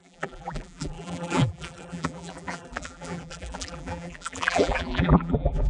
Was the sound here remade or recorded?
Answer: remade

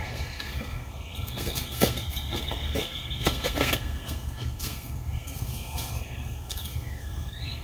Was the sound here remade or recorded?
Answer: remade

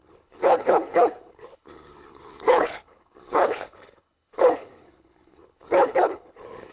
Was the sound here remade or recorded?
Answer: remade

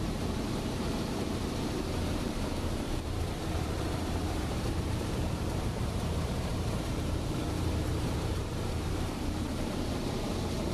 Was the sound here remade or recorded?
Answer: remade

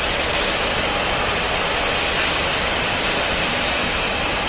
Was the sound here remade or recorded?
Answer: recorded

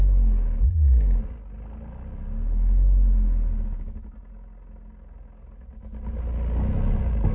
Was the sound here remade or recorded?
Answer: recorded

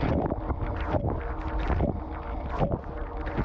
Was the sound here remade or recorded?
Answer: recorded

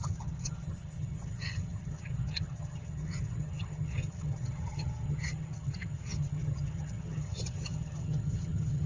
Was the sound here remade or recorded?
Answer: remade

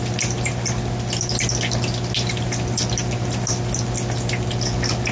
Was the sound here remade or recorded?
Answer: recorded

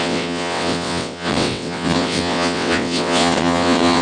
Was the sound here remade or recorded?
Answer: remade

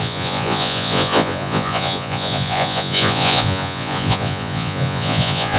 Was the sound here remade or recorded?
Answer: remade